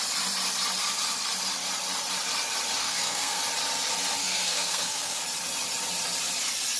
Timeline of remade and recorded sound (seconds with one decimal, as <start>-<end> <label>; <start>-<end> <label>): 0.0-2.8 recorded; 2.8-3.4 remade; 3.4-4.2 recorded; 4.2-5.2 remade; 5.2-6.8 recorded